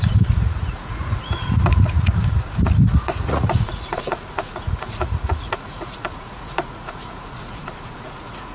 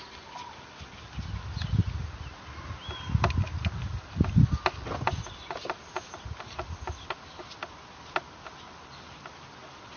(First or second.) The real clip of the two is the second